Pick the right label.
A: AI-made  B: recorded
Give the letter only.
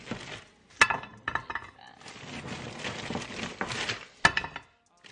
B